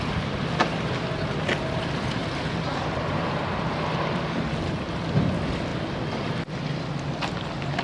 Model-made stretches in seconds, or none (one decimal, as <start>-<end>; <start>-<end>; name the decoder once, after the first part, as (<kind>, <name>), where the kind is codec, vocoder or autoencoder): none